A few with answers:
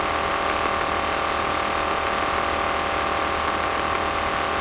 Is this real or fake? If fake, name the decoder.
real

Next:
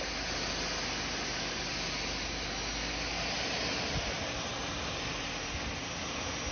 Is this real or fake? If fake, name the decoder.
real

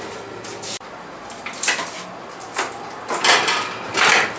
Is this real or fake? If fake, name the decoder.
real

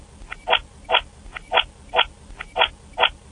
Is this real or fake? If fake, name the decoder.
real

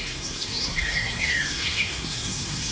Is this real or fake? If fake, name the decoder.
fake, codec, SNAC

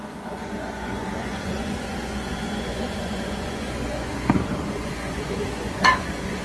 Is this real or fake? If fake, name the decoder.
fake, vocoder, Vocos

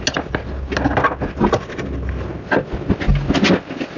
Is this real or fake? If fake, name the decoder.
real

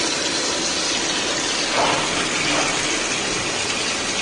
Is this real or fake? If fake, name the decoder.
real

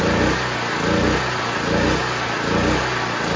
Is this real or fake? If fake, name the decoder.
real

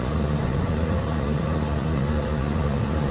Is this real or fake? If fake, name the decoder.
fake, vocoder, Vocos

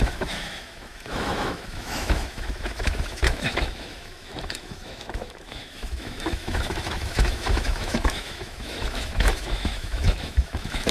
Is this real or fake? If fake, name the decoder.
fake, autoencoder, DAC-VAE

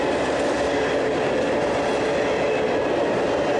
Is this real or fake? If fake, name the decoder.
real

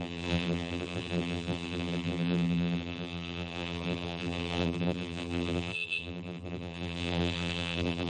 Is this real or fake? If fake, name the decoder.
fake, vocoder, BigVGAN v2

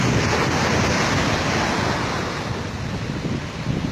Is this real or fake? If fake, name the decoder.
real